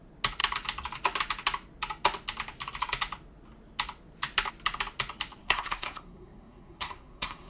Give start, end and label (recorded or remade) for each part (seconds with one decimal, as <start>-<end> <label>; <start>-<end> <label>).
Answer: 0.0-5.4 recorded; 5.4-7.5 remade